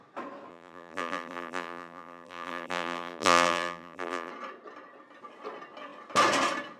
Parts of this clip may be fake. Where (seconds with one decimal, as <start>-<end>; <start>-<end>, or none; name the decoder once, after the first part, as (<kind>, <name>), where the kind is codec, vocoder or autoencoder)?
0.5-4.3 (vocoder, BigVGAN v2)